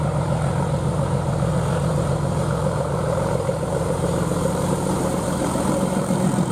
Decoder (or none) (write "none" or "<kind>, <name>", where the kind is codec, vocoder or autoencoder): vocoder, BigVGAN v2